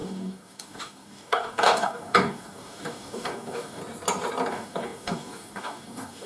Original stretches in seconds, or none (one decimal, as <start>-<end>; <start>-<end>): 3.8-4.5